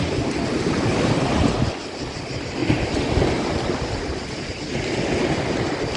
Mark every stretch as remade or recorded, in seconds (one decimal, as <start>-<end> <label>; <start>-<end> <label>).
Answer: 0.0-2.6 recorded; 2.6-3.8 remade; 3.8-6.0 recorded